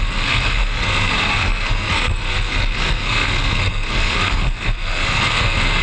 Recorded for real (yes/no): no